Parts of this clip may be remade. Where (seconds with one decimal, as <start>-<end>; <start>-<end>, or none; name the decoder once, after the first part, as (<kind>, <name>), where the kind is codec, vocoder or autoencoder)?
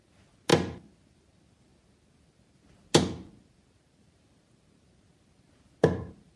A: none